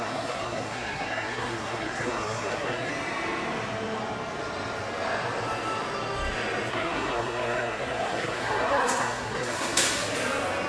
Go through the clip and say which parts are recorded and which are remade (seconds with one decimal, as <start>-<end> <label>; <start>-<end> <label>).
0.0-2.9 remade; 2.9-6.7 recorded; 6.7-10.0 remade; 10.0-10.7 recorded